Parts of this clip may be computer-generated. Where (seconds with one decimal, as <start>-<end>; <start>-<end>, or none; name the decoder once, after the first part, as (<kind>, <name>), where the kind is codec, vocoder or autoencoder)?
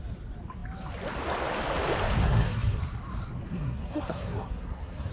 2.2-2.8 (codec, SNAC); 3.5-5.1